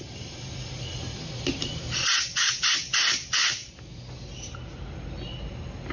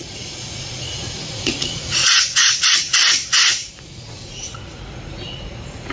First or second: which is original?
first